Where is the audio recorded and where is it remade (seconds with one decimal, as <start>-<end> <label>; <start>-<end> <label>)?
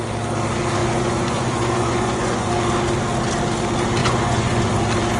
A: 0.0-0.8 recorded; 0.8-2.5 remade; 2.5-4.0 recorded; 4.0-4.7 remade; 4.7-5.2 recorded